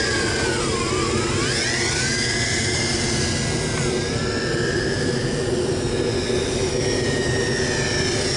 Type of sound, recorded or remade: recorded